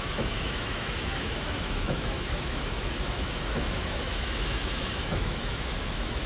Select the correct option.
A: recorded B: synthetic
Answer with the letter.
B